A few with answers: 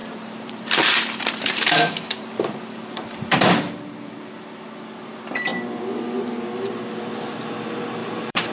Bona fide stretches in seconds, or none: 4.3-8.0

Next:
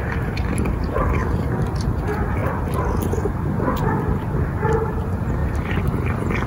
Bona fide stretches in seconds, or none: 0.0-1.2; 1.9-5.4

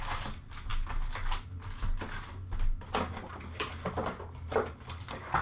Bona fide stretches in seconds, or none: 0.0-5.4

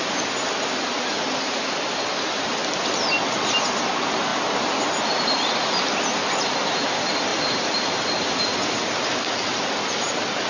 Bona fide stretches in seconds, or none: 0.0-7.3; 9.6-10.5

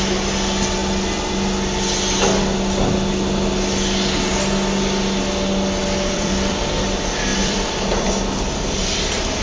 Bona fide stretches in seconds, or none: 0.0-5.8; 6.6-7.3; 8.1-9.4

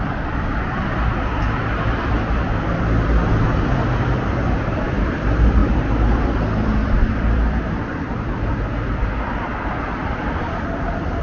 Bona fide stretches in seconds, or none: none

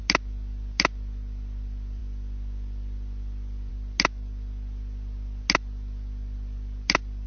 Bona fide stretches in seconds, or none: 0.0-7.3

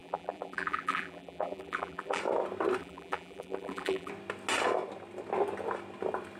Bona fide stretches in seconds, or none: 2.2-2.8; 4.1-6.4